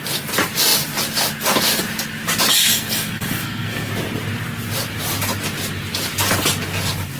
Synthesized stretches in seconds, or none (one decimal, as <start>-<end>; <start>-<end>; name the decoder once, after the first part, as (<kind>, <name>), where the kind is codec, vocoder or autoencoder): 2.6-3.9 (codec, SNAC)